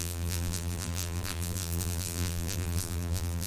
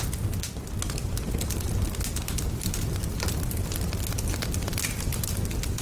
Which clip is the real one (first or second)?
second